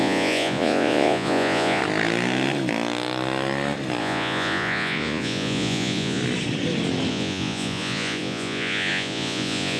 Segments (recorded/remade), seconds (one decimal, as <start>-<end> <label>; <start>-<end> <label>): 0.0-1.8 remade; 1.8-4.0 recorded; 4.0-6.2 remade; 6.2-7.1 recorded; 7.1-9.8 remade